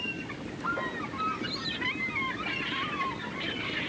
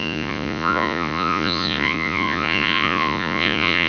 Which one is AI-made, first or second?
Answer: second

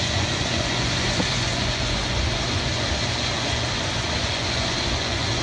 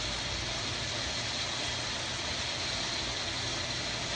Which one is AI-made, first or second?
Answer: first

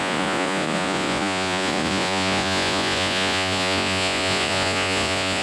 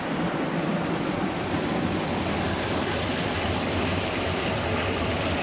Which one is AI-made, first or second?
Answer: first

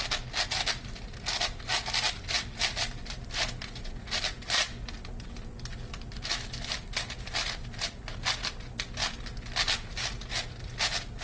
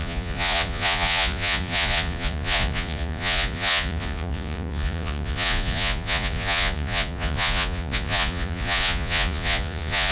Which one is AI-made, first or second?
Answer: second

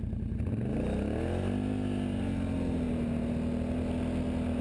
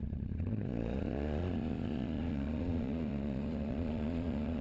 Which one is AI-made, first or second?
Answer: second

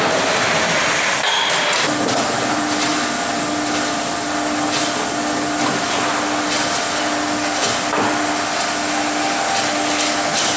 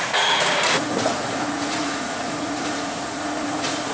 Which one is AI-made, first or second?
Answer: second